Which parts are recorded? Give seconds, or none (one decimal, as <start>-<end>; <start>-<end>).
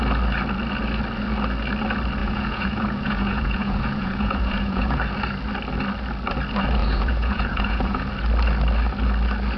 0.0-2.2; 5.0-6.8; 8.1-9.6